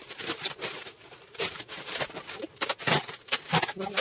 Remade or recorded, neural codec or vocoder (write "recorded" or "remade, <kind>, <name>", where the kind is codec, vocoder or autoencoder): remade, vocoder, BigVGAN v2